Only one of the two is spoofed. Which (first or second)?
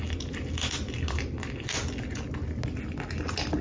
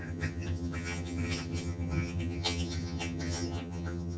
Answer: second